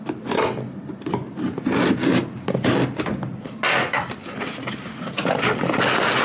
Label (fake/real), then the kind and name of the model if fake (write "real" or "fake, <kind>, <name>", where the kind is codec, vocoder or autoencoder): real